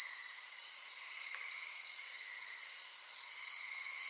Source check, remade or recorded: remade